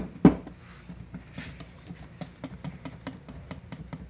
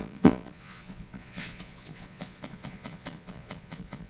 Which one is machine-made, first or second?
second